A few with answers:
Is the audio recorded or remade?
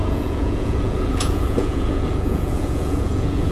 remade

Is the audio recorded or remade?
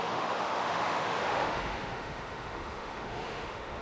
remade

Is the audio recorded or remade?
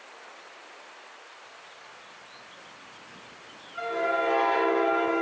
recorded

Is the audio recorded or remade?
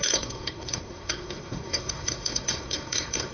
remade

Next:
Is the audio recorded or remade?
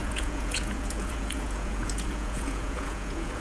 remade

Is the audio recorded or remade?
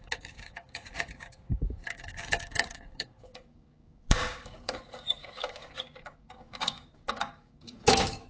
remade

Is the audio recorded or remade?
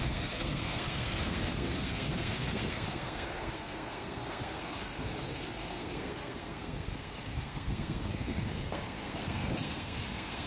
remade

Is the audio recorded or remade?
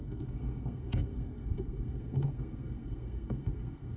remade